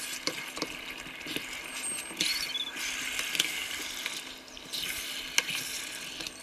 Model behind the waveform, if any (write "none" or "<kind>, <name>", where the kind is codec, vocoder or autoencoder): none